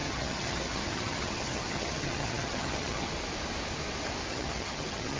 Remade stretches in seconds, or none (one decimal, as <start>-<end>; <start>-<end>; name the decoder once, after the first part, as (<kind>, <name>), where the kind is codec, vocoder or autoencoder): 0.0-3.1 (vocoder, HiFi-GAN); 4.3-5.2